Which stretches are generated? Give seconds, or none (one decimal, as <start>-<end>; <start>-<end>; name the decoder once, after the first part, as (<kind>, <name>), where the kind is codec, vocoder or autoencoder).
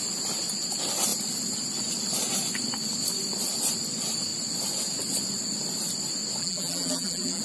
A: 6.4-7.4 (vocoder, BigVGAN v2)